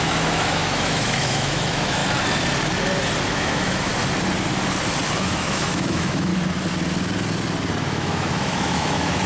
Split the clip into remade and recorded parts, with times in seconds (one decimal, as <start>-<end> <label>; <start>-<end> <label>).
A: 0.0-2.0 remade; 2.0-3.3 recorded; 3.3-3.9 remade; 3.9-5.2 recorded; 5.2-6.3 remade; 6.3-7.8 recorded; 7.8-9.3 remade